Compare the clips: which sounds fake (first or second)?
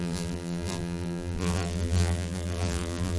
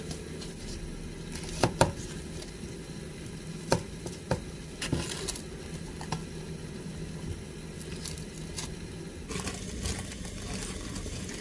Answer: first